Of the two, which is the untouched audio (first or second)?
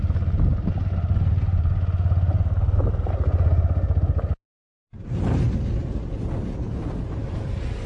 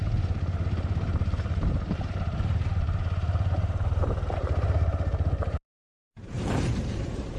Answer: first